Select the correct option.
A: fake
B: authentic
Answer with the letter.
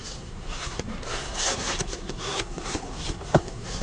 A